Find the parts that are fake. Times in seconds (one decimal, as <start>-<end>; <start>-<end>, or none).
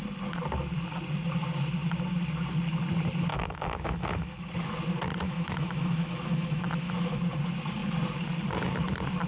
3.3-4.5; 5.1-7.2